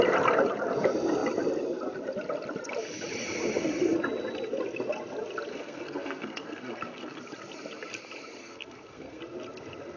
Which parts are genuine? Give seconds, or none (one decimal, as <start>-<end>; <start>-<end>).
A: 0.0-5.5; 7.2-8.4; 9.2-10.0

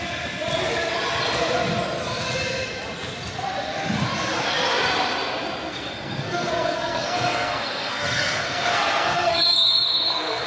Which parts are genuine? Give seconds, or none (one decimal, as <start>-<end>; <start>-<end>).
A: 0.0-5.7

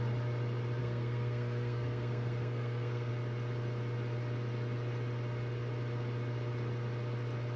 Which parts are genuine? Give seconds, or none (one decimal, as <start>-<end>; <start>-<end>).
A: 0.0-0.8; 3.1-7.6

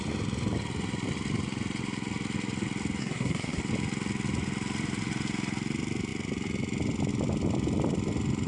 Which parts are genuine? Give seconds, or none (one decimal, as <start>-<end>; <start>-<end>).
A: 0.0-3.0; 3.6-8.5

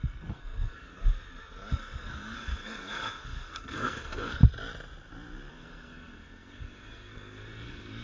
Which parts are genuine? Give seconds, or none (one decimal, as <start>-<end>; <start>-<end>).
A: 1.0-1.7; 4.4-5.5

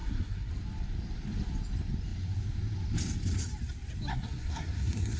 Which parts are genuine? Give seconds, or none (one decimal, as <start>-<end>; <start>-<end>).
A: 0.5-4.1

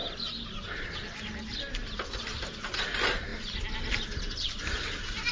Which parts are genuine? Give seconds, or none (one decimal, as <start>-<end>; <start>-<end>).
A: 0.0-5.3